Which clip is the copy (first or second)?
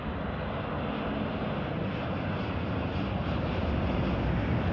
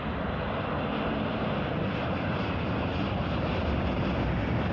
second